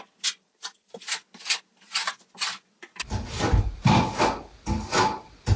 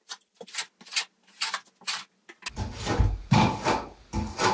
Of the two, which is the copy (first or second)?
first